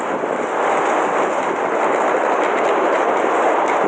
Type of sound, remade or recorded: recorded